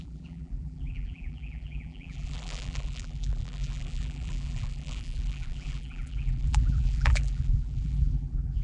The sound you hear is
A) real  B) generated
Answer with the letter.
B